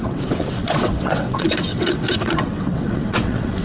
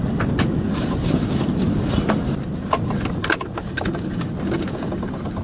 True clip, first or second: second